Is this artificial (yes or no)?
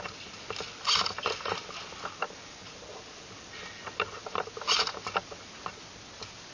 no